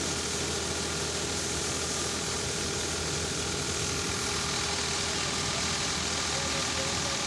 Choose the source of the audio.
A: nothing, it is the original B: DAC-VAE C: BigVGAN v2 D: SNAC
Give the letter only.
A